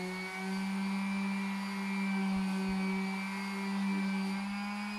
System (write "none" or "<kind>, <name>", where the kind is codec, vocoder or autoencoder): none